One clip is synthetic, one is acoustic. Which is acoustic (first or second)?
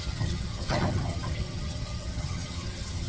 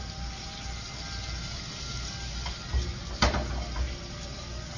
second